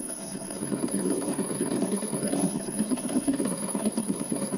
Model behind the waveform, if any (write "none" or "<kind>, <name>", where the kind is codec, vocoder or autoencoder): codec, SNAC